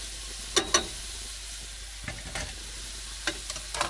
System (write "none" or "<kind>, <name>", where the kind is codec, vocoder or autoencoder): none